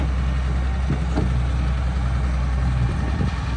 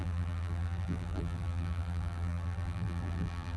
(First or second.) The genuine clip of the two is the first